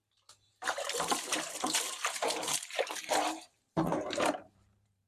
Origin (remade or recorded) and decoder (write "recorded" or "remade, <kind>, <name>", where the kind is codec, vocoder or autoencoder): remade, vocoder, BigVGAN v2